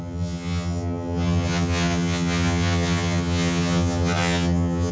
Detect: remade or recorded remade